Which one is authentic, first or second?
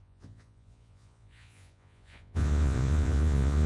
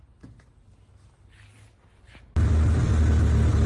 second